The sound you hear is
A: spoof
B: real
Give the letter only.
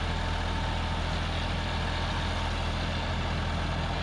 B